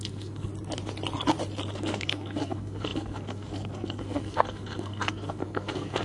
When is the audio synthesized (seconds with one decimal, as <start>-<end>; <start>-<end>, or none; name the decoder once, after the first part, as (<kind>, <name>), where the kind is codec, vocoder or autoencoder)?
0.0-0.5 (codec, SNAC); 1.7-6.0